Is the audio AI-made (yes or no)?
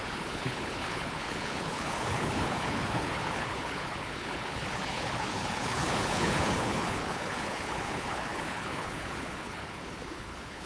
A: yes